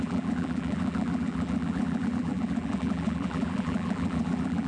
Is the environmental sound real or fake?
fake